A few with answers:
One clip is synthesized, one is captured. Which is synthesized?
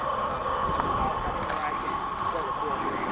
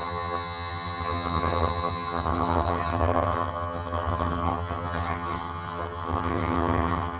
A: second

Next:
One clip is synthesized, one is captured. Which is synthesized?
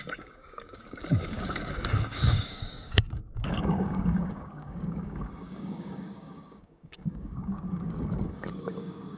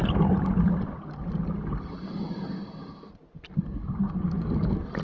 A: first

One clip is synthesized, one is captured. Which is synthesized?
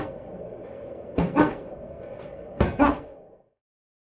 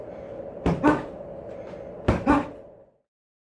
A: first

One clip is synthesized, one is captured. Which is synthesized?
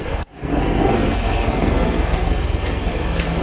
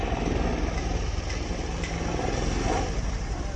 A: first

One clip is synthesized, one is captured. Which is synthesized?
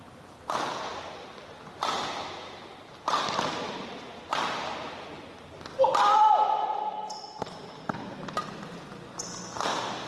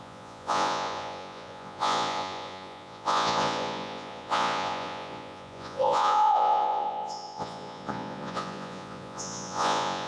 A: second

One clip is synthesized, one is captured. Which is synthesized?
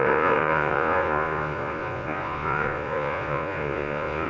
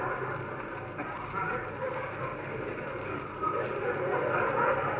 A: first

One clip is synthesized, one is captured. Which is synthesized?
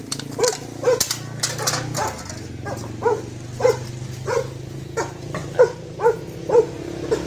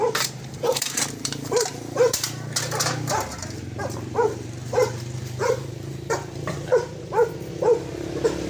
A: second